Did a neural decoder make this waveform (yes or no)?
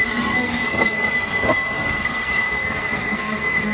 yes